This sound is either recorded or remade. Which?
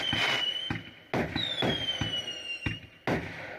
recorded